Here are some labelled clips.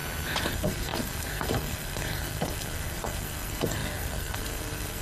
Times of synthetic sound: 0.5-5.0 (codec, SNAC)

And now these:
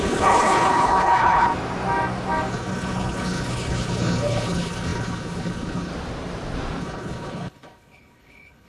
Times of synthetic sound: 0.0-1.5 (codec, HILCodec); 2.5-5.9; 6.8-8.7